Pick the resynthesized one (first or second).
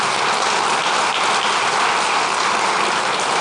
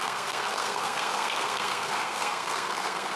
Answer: second